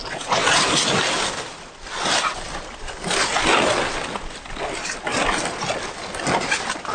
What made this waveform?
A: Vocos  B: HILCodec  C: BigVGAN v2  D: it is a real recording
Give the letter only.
D